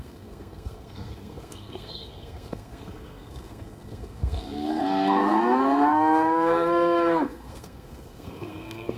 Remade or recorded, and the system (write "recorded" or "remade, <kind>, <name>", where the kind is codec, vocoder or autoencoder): remade, codec, SNAC